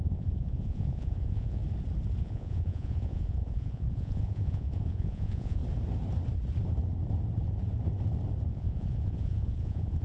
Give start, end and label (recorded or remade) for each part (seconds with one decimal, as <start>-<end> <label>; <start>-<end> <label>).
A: 0.0-1.6 remade; 1.6-2.2 recorded; 2.2-5.6 remade; 5.6-8.5 recorded; 8.5-10.0 remade